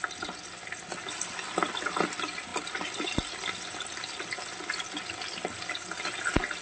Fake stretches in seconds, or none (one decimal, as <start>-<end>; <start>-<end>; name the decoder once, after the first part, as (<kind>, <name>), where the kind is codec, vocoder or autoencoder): none